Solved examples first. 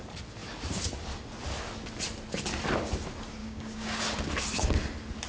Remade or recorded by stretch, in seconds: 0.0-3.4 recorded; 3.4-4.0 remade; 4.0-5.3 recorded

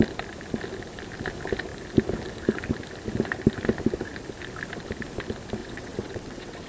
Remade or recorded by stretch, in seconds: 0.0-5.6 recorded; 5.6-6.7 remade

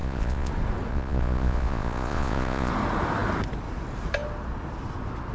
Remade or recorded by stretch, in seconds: 0.0-0.5 remade; 0.5-0.9 recorded; 0.9-2.7 remade; 2.7-5.3 recorded

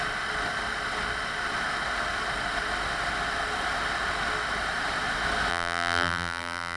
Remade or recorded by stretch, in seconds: 0.0-5.5 recorded; 5.5-6.8 remade

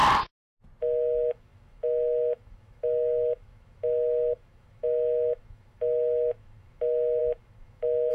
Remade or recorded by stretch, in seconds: 0.0-0.8 recorded; 0.8-8.1 remade

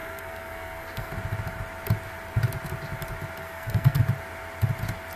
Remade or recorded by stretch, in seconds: 0.0-1.1 remade; 1.1-3.4 recorded; 3.4-4.0 remade; 4.0-5.2 recorded

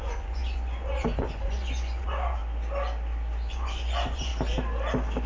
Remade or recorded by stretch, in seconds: 0.0-2.4 remade; 2.4-3.5 recorded; 3.5-4.3 remade; 4.3-5.3 recorded